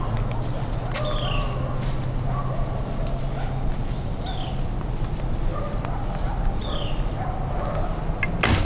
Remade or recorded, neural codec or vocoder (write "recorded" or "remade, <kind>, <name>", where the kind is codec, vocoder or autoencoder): recorded